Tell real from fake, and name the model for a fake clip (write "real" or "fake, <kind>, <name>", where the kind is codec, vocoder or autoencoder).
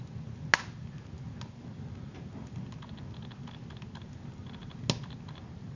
real